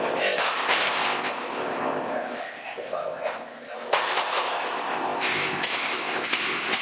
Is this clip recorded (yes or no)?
no